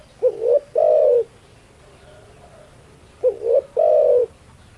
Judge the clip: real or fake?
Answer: real